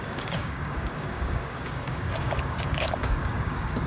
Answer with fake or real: fake